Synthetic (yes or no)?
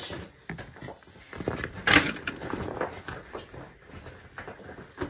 no